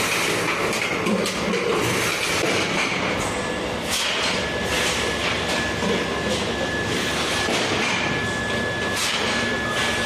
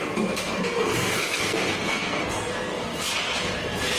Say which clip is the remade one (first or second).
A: second